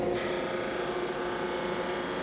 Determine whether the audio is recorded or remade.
recorded